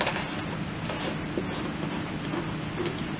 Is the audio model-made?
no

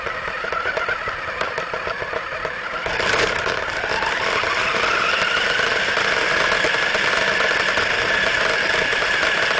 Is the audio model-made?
no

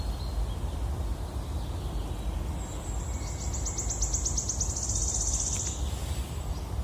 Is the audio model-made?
no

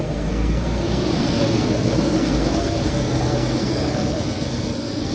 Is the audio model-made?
yes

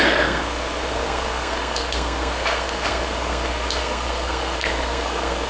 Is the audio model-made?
yes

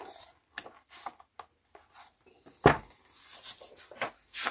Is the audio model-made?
no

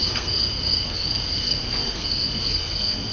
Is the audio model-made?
yes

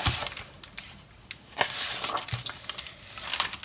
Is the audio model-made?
no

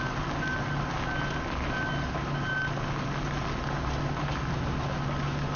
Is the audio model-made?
no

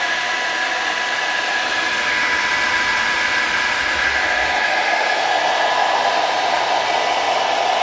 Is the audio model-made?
no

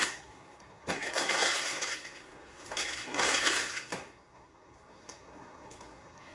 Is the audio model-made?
yes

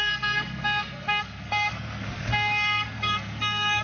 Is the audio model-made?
yes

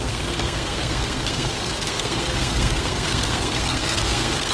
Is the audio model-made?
yes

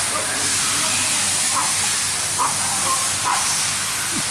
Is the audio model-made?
no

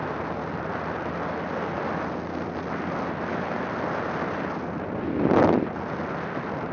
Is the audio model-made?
no